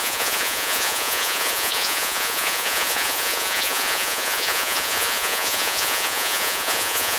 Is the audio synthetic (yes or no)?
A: yes